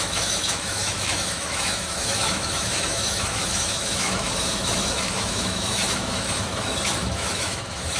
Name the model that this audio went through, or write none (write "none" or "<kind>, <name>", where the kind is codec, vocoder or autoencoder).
autoencoder, DAC-VAE